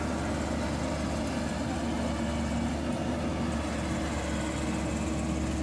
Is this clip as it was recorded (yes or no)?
yes